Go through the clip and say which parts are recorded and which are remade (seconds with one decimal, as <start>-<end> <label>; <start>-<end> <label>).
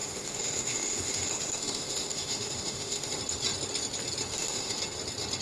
0.0-3.2 remade; 3.2-4.3 recorded; 4.3-4.8 remade; 4.8-5.4 recorded